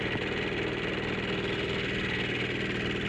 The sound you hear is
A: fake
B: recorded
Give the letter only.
B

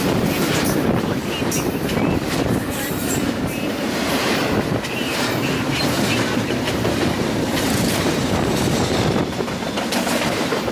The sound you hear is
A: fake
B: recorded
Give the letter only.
A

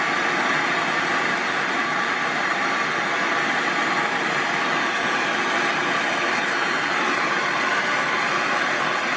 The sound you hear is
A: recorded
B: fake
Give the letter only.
A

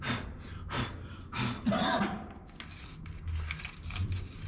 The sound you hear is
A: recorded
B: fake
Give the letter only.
A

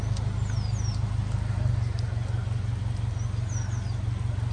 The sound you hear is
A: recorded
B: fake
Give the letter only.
A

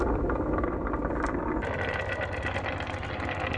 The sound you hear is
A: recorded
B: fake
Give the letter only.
A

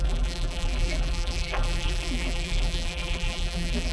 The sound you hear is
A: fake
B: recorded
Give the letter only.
A